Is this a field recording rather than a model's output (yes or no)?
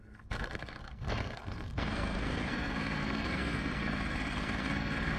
no